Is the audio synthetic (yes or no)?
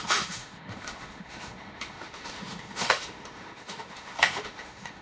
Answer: yes